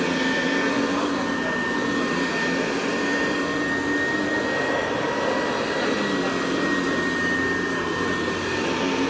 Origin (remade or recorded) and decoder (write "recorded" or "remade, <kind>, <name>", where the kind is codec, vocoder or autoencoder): recorded